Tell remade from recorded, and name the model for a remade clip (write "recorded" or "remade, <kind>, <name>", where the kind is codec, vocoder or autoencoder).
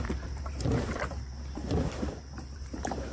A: remade, vocoder, BigVGAN v2